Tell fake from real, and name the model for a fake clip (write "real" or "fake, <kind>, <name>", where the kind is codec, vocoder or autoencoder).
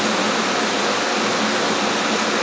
real